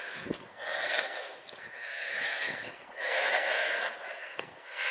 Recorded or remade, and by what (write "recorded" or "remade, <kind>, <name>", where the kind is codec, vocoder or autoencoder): remade, codec, SNAC